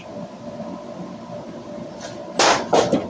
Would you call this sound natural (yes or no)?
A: yes